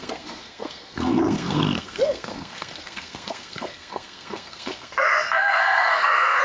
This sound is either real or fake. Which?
fake